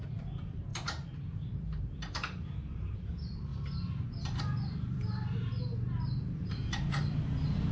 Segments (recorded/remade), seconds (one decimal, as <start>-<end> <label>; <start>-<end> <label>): 0.0-3.5 remade; 3.5-4.4 recorded; 4.4-5.5 remade; 5.5-6.5 recorded; 6.5-7.7 remade